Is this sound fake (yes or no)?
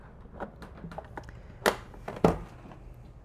no